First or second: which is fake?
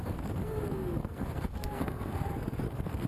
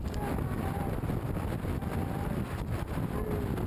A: first